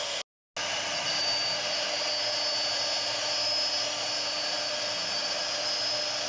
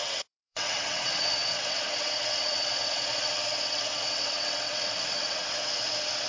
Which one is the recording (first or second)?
first